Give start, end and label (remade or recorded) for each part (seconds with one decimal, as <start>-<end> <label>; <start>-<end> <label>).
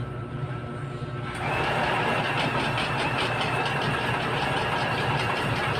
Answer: 0.0-0.6 remade; 0.6-3.8 recorded; 3.8-5.8 remade